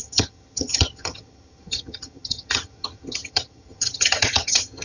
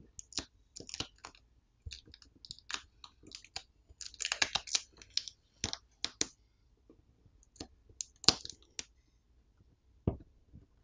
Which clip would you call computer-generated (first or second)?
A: first